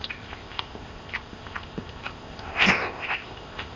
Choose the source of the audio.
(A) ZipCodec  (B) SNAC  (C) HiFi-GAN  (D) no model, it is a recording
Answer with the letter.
A